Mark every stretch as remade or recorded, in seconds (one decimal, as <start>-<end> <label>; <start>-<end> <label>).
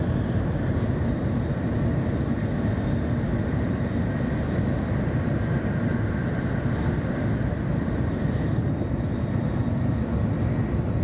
0.0-11.0 recorded